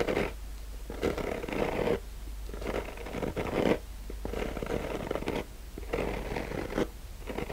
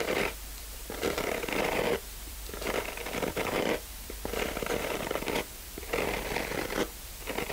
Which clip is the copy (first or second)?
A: second